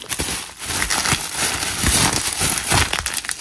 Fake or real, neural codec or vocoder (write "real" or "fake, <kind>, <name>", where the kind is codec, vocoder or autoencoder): real